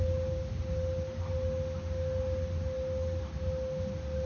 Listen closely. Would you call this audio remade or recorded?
recorded